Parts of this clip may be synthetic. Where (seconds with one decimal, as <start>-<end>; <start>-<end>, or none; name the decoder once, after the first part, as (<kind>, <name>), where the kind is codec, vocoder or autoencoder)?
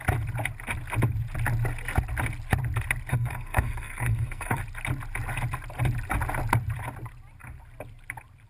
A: 3.1-4.6 (codec, SNAC)